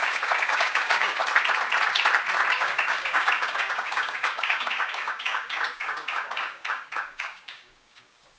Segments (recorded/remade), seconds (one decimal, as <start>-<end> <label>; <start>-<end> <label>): 0.0-1.2 remade; 1.2-2.5 recorded; 2.5-8.4 remade